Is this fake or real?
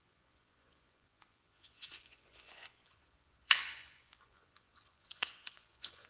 fake